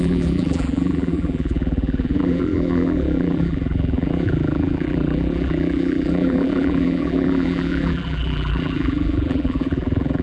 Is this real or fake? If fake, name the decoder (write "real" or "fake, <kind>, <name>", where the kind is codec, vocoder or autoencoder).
fake, vocoder, BigVGAN v2